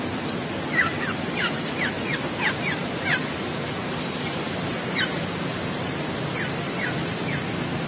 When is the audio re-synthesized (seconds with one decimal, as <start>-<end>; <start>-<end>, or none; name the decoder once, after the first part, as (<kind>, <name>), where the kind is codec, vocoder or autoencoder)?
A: 0.0-7.9 (vocoder, BigVGAN v2)